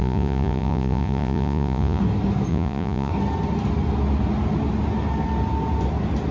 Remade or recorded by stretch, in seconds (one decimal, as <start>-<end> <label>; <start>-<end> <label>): 0.0-2.0 remade; 2.0-2.5 recorded; 2.5-3.1 remade; 3.1-6.3 recorded

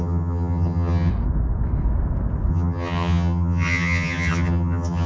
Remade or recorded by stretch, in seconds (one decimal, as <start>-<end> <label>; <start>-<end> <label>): 0.0-1.1 remade; 1.1-2.5 recorded; 2.5-5.1 remade

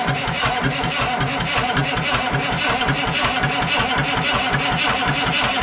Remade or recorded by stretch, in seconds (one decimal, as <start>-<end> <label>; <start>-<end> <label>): 0.0-5.6 recorded

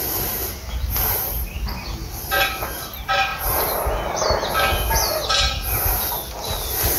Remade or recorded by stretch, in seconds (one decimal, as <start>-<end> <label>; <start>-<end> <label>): 0.0-7.0 recorded